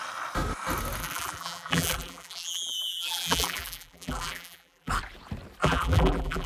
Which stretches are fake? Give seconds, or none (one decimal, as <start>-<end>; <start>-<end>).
1.0-4.9; 5.6-6.5